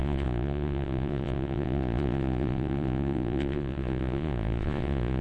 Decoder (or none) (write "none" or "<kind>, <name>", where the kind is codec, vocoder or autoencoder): vocoder, Vocos